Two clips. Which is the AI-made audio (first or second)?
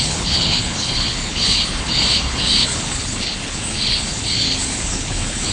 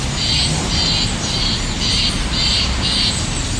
first